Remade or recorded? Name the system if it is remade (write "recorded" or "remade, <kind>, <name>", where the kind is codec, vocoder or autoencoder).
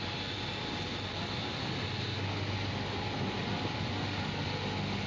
recorded